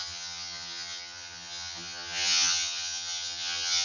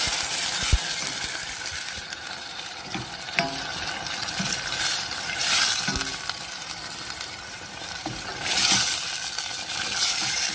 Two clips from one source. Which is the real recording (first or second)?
second